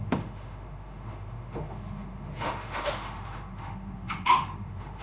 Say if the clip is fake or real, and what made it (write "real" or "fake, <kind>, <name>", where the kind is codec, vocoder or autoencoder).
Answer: fake, autoencoder, DAC-VAE